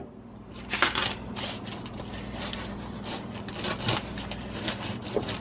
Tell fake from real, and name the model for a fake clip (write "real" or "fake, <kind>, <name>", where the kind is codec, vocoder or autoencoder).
real